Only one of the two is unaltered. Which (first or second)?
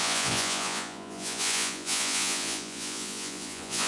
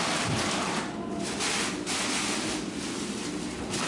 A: second